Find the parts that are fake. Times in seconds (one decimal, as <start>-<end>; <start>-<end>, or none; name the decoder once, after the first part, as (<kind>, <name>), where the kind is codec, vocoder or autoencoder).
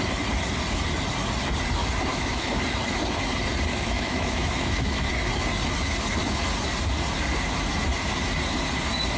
2.1-2.6 (autoencoder, DAC-VAE); 3.7-5.1